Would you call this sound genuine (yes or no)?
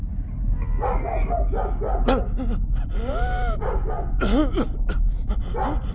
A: yes